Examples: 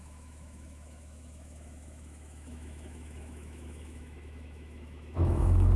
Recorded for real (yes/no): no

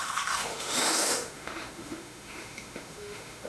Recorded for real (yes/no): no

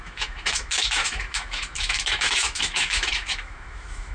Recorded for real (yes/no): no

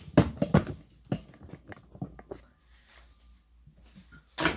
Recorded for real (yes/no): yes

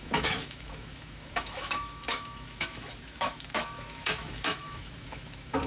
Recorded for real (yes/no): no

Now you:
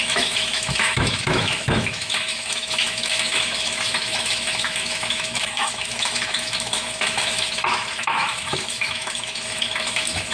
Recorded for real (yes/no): no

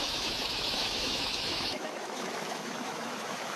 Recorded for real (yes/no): no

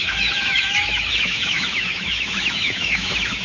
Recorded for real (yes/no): no